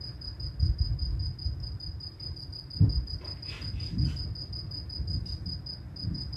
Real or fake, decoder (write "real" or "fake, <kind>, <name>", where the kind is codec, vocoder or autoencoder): real